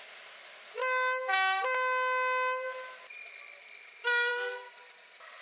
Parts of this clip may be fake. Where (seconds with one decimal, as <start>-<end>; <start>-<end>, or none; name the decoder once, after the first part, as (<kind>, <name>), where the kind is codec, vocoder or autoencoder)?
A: none